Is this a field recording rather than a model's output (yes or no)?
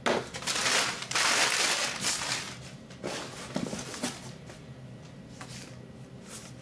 yes